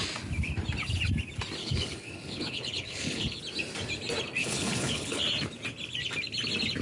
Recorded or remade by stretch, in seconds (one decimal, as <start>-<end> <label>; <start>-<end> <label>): 0.0-1.6 recorded; 1.6-3.4 remade; 3.4-4.4 recorded; 4.4-5.2 remade; 5.2-6.8 recorded